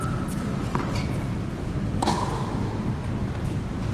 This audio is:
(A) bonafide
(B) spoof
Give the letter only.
A